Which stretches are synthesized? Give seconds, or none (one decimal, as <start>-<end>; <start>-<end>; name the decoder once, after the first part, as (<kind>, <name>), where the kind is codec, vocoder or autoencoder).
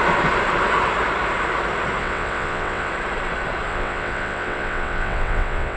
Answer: 2.0-2.9 (vocoder, WaveNeXt); 3.7-5.8